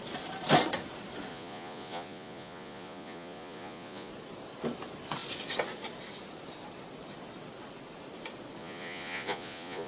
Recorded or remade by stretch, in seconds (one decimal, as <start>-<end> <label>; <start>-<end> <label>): 0.0-1.3 recorded; 1.3-4.1 remade; 4.1-8.6 recorded; 8.6-9.9 remade